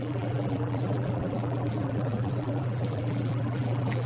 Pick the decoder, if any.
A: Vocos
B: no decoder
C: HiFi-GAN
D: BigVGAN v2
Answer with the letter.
D